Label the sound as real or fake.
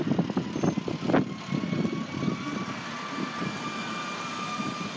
real